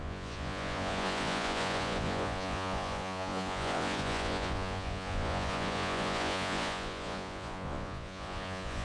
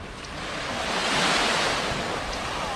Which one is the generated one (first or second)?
first